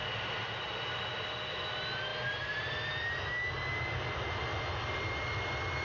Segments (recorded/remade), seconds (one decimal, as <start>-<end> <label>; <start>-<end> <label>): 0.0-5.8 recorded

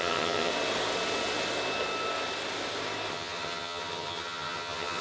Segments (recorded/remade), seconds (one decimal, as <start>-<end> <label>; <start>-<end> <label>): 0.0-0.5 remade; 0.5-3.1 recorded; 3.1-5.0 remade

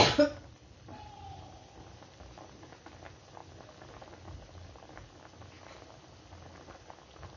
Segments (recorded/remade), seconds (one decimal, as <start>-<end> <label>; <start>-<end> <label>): 0.0-7.4 recorded